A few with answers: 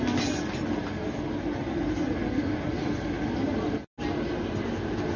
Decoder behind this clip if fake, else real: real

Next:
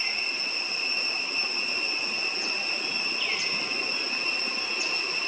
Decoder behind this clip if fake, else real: real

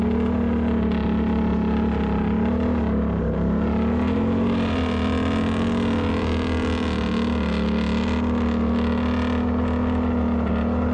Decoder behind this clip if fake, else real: real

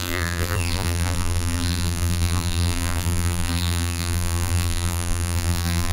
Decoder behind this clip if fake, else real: fake, vocoder, BigVGAN v2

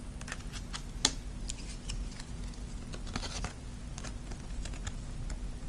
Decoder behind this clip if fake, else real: real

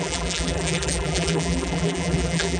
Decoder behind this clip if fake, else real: fake, vocoder, BigVGAN v2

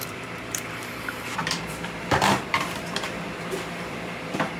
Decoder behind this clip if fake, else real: fake, vocoder, BigVGAN v2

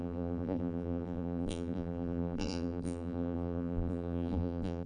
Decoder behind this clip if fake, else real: fake, vocoder, BigVGAN v2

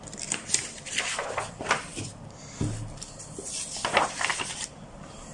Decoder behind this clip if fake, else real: fake, vocoder, BigVGAN v2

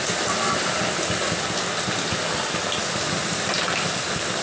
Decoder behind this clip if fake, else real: real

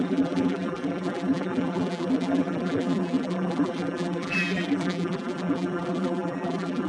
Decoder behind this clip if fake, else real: fake, vocoder, BigVGAN v2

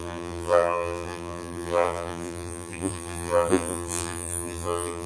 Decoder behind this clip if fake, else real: fake, vocoder, BigVGAN v2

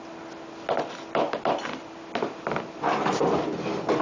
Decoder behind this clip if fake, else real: real